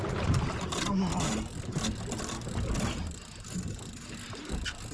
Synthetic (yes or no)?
no